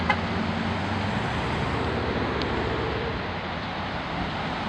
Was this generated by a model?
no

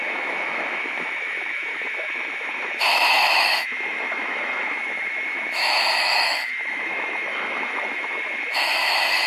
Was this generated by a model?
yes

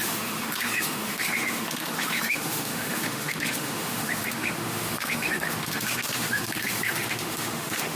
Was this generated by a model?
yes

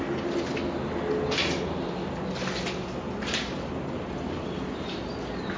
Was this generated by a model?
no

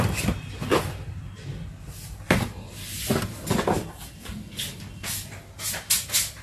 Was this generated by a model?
no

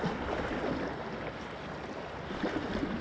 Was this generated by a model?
no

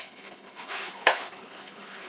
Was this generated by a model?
yes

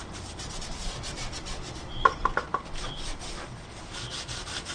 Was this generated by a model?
no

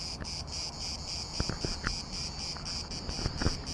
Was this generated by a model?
no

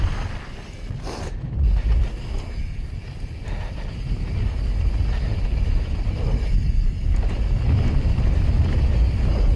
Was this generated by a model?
no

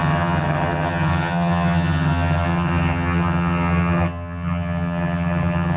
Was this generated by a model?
yes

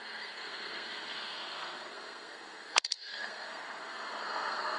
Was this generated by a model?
yes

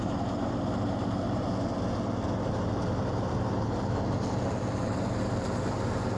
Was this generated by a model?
yes